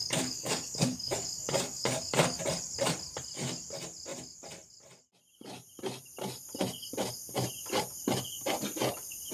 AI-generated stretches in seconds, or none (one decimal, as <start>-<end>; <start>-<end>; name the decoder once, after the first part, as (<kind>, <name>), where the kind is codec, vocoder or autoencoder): 0.0-2.4 (codec, DAC)